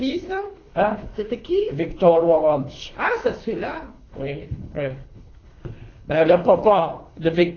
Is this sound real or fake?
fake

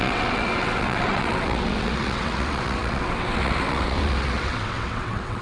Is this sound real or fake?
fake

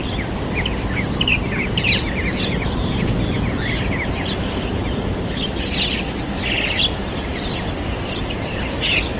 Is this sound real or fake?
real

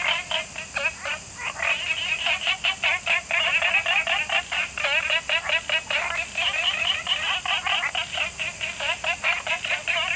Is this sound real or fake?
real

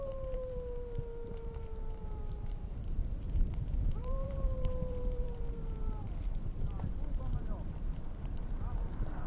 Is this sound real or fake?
fake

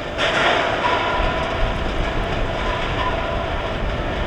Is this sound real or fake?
real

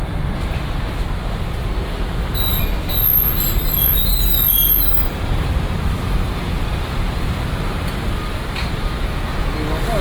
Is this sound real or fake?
real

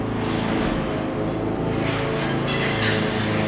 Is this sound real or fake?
real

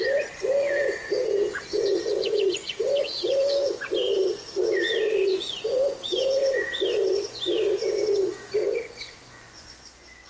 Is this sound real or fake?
fake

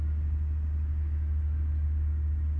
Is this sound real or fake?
real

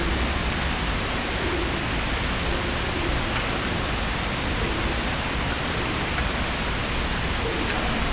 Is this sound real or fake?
real